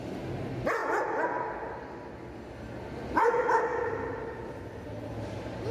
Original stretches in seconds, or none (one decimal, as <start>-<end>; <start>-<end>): 0.0-5.7